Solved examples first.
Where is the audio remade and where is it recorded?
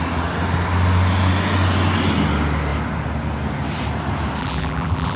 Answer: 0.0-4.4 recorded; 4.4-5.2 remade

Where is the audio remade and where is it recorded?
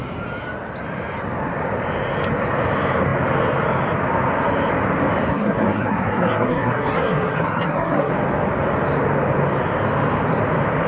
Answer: 0.0-5.3 recorded; 5.3-8.1 remade; 8.1-10.9 recorded